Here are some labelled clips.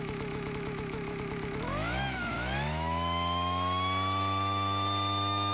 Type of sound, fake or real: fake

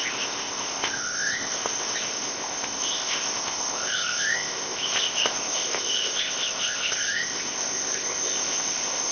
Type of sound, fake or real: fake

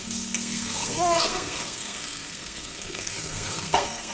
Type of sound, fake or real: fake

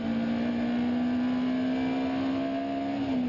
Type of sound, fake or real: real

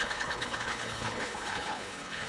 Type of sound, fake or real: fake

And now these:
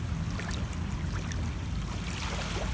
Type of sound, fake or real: real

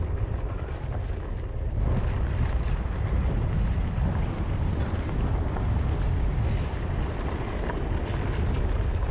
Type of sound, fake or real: real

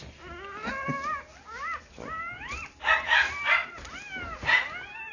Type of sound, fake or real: real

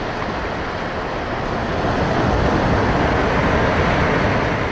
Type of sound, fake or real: real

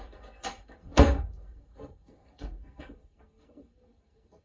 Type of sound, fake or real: fake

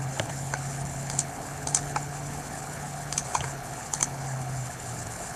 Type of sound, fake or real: fake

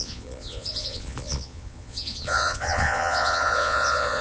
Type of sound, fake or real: fake